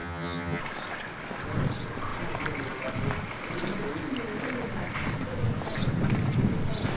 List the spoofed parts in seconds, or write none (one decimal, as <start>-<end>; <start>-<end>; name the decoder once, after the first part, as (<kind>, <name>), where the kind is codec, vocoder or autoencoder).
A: 0.0-0.6 (vocoder, HiFi-GAN)